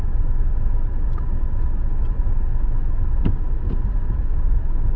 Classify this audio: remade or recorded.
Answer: recorded